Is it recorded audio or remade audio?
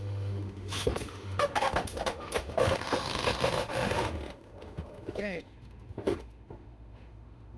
remade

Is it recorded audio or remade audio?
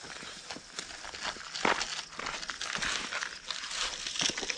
recorded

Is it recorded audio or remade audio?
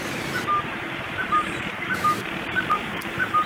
remade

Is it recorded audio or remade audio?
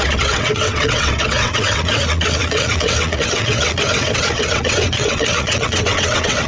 remade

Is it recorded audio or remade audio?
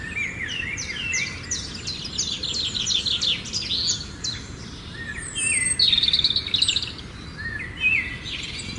recorded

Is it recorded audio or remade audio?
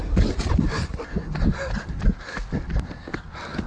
recorded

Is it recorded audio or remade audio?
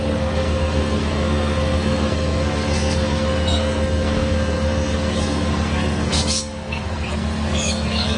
remade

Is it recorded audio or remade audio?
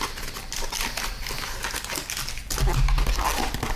recorded